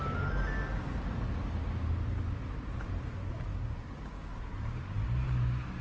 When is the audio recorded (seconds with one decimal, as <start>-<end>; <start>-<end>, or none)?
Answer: 0.0-3.5; 4.3-5.8